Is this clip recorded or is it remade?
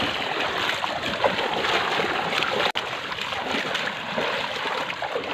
recorded